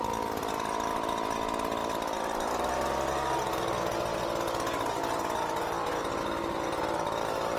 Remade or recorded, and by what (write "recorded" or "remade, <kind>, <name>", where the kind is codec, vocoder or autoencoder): recorded